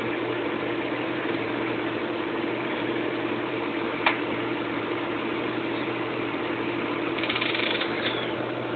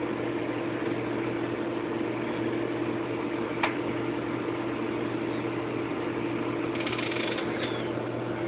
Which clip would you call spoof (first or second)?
first